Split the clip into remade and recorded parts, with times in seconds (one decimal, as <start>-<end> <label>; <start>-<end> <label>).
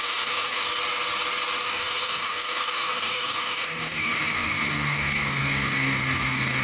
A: 0.0-0.7 remade; 0.7-1.6 recorded; 1.6-6.6 remade